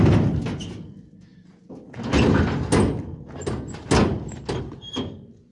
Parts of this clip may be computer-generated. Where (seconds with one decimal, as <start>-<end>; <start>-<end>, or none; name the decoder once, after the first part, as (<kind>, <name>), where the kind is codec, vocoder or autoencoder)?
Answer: none